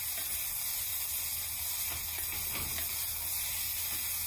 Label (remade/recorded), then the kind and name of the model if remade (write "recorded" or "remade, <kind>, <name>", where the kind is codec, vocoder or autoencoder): recorded